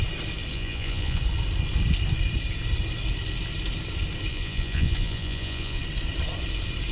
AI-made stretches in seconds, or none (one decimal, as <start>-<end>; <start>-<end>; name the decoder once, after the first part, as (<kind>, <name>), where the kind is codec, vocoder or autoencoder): 0.5-1.2 (vocoder, Vocos); 4.3-5.8

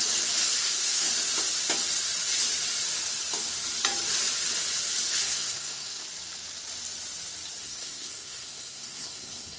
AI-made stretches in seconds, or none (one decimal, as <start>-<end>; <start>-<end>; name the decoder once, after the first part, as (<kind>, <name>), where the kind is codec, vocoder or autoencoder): 0.6-1.1 (codec, SNAC); 5.2-6.0; 7.6-9.6

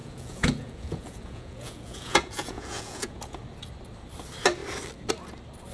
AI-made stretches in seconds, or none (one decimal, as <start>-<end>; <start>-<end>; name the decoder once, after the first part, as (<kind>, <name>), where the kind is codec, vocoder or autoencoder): 0.0-3.4 (vocoder, Vocos)

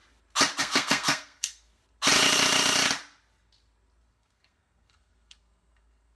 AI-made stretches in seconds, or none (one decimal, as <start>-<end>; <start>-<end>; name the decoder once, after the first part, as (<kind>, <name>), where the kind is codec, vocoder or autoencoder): 0.6-1.8 (codec, SNAC); 4.1-6.2

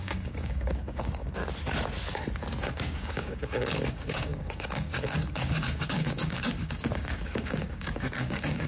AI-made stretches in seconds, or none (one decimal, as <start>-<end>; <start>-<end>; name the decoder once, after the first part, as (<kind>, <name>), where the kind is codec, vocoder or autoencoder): 0.0-1.4 (codec, DAC); 2.6-8.7

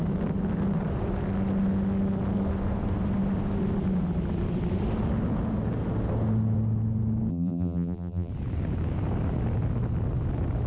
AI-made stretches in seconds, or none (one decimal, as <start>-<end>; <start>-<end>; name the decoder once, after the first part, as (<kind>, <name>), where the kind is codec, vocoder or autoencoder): 7.3-8.3 (vocoder, BigVGAN v2)

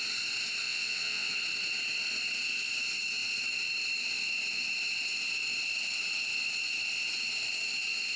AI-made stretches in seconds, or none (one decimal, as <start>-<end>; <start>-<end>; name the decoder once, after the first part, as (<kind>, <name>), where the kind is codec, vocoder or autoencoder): 0.6-1.3 (vocoder, WaveNeXt)

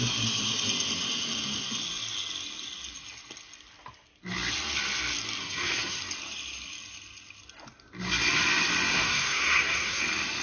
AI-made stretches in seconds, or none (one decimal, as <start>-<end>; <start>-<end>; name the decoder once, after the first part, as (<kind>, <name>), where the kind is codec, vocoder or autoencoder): 5.4-6.0 (codec, SNAC); 8.9-10.0